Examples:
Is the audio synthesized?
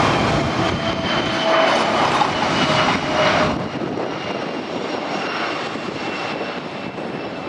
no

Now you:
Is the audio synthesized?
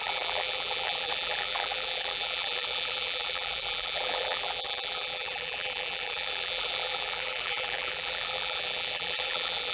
yes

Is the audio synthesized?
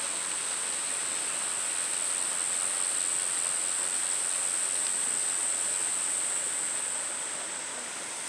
no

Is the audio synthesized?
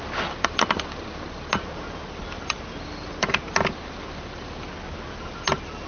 no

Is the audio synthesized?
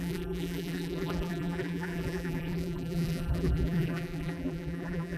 yes